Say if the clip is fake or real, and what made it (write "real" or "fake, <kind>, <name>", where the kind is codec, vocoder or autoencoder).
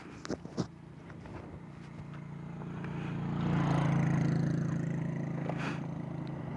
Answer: real